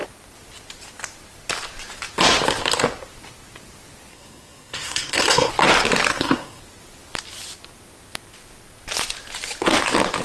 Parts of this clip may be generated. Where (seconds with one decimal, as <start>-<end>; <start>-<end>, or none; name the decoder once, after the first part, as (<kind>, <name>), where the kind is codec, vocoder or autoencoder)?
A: 4.1-5.5 (codec, SNAC); 6.1-6.6